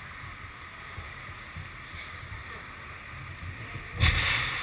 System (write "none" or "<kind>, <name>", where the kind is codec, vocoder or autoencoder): none